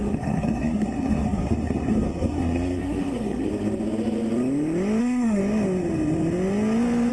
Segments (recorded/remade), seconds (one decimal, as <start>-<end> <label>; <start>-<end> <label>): 0.0-3.5 remade; 3.5-5.0 recorded; 5.0-5.4 remade; 5.4-7.1 recorded